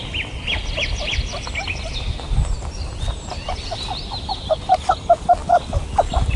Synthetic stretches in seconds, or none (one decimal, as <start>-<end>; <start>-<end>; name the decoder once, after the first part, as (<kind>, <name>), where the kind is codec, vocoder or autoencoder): none